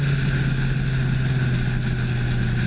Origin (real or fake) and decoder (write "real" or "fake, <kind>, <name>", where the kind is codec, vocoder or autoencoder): real